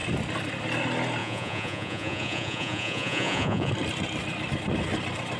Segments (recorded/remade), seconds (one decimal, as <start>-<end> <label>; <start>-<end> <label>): 0.0-1.2 recorded; 1.2-3.7 remade; 3.7-5.4 recorded